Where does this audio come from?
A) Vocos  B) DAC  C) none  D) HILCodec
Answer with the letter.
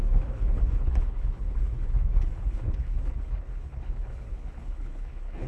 D